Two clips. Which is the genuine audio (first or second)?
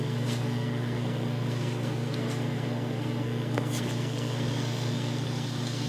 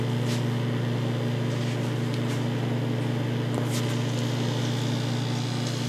second